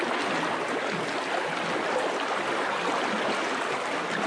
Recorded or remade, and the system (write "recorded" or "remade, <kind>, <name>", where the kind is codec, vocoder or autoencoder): recorded